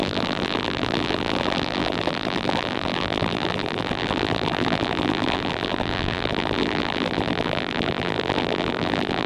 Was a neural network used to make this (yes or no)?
yes